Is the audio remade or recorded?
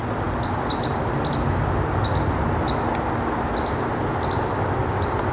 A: recorded